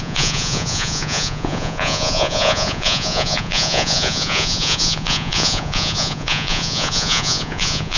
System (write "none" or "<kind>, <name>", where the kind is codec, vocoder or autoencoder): vocoder, Vocos